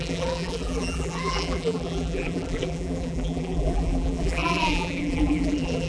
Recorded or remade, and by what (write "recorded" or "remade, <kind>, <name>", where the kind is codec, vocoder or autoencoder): remade, vocoder, BigVGAN v2